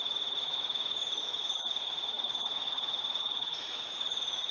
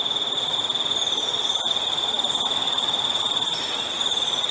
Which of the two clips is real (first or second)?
second